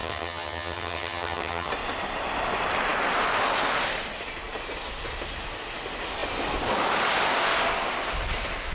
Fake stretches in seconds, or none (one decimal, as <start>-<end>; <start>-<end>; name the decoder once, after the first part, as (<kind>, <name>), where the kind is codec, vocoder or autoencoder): 0.0-1.7 (vocoder, HiFi-GAN)